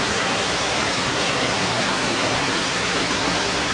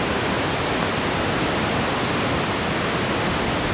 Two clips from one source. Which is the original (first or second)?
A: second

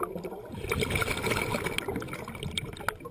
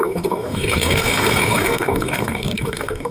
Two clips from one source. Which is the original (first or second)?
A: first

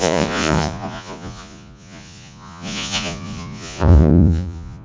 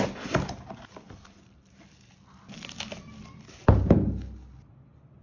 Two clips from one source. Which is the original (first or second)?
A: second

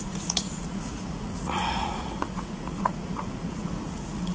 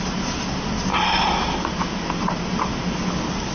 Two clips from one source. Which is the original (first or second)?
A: second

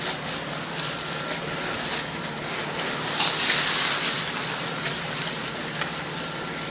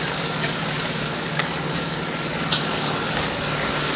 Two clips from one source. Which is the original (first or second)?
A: first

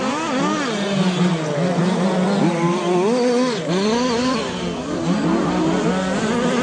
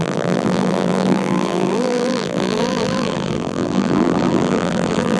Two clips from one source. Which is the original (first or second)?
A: first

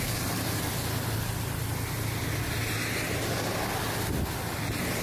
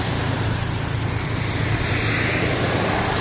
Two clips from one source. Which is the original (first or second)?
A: first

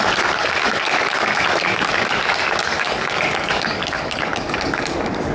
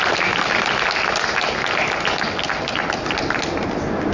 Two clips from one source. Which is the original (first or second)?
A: second